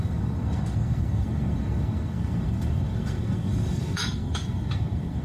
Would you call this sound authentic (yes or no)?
no